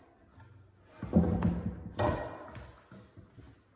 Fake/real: real